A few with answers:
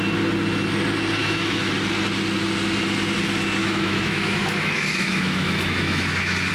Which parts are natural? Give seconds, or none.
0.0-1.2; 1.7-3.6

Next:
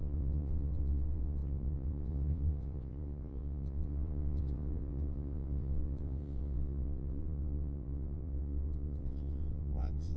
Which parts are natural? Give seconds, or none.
none

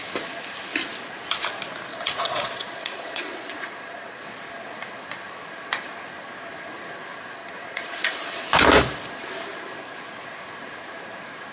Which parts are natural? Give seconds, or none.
0.0-1.9; 4.2-7.4; 8.5-11.5

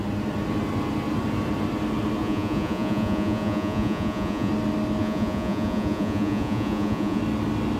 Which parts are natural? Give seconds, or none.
0.0-2.2; 4.5-5.0; 7.2-7.8

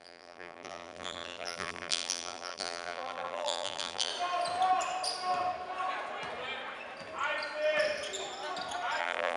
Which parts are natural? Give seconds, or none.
4.1-9.0

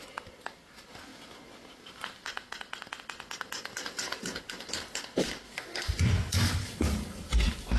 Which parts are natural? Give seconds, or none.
0.0-7.8

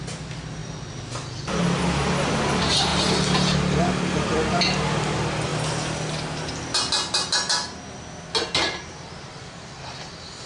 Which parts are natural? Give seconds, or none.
0.0-10.5